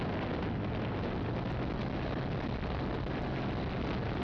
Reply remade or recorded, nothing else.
recorded